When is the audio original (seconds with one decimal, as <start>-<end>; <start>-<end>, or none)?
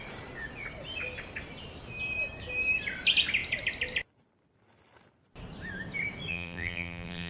0.0-6.3